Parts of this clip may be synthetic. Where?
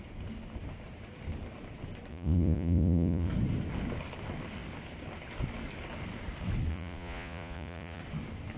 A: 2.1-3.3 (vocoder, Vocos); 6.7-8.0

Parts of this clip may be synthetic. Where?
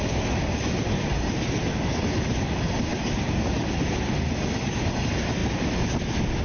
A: none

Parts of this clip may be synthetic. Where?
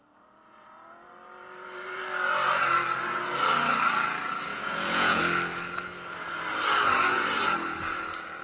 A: 4.5-5.2 (vocoder, Vocos)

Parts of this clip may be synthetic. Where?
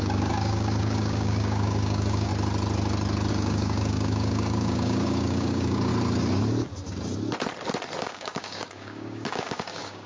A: 0.0-2.3 (codec, DAC); 3.3-5.9; 8.0-10.1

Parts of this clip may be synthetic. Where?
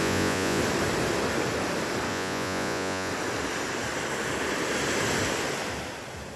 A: 0.0-0.6 (vocoder, Vocos); 2.1-3.1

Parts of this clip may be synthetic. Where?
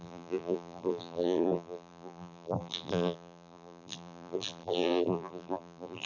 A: 0.0-6.1 (vocoder, BigVGAN v2)